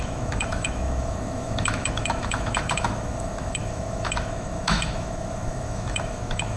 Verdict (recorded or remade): remade